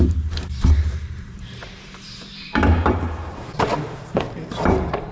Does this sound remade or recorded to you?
remade